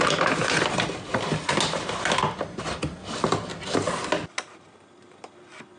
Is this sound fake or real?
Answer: real